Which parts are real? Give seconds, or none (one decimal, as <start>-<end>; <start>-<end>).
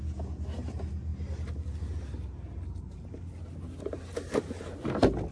0.0-5.3